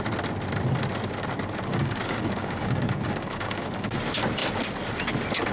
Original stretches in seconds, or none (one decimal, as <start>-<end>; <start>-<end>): 0.0-1.7; 4.0-5.5